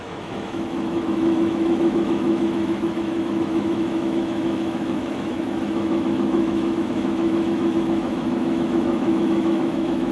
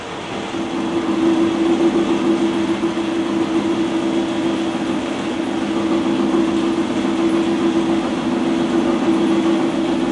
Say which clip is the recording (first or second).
second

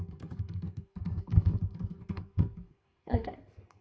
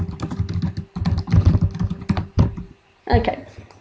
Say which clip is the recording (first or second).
second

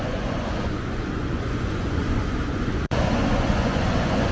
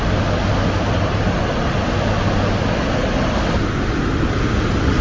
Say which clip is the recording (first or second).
second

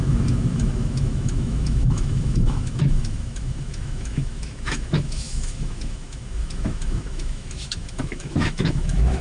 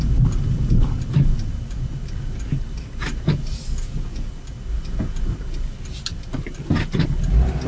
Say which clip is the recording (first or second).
second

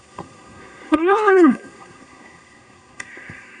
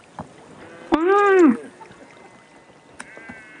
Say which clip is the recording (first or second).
second